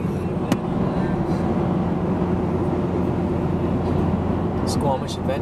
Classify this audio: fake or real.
real